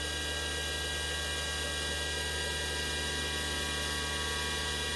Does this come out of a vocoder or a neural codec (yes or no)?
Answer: no